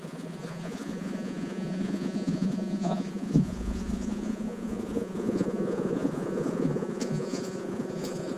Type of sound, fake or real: fake